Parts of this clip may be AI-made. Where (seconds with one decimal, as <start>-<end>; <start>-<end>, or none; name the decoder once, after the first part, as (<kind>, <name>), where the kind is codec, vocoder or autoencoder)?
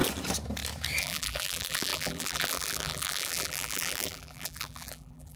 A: 1.0-5.4 (vocoder, BigVGAN v2)